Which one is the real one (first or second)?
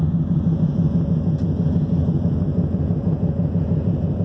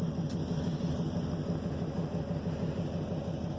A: second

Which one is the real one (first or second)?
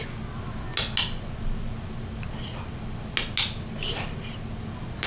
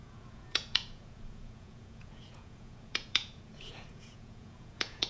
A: first